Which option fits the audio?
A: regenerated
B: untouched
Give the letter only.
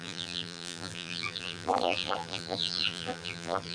A